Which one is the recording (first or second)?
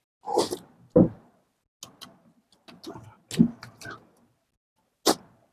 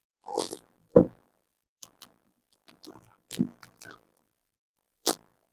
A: first